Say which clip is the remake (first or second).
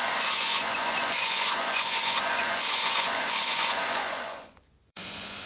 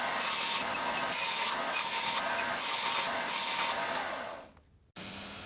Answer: first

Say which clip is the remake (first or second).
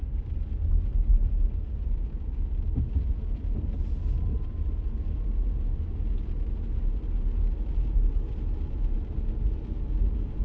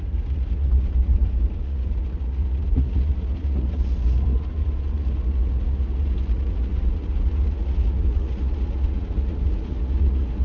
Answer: second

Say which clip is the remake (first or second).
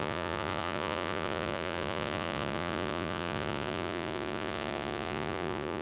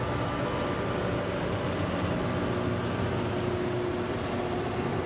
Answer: first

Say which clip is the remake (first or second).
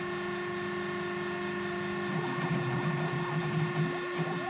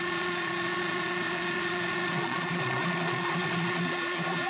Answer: second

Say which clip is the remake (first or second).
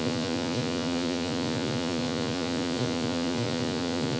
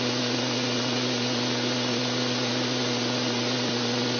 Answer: first